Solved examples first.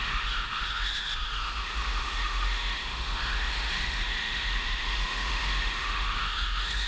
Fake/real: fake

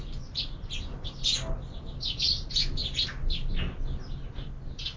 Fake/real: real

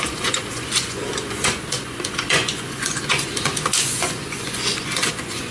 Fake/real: fake